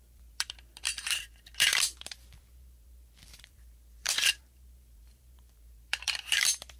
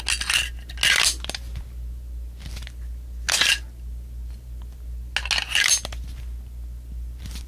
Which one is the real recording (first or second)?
second